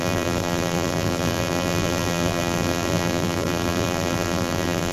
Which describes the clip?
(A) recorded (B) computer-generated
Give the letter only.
B